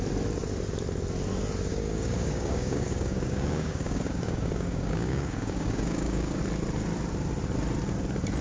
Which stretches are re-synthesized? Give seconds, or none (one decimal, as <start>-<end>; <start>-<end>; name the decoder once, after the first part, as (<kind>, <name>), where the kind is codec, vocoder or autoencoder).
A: 1.7-6.4 (codec, DAC)